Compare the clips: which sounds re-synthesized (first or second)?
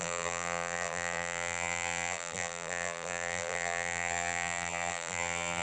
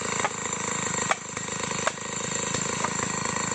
first